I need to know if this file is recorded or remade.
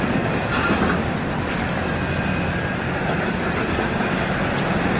recorded